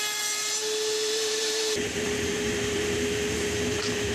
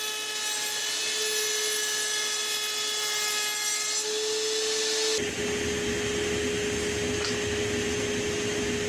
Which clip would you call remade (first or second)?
first